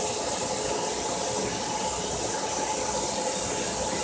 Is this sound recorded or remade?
recorded